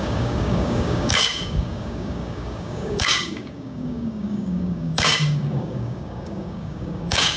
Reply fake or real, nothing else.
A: fake